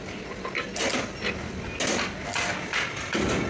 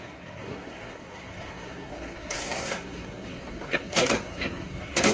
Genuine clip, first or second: first